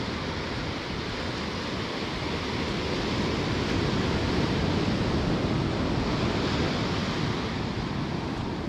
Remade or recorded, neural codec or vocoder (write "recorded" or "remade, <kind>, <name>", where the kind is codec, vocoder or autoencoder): recorded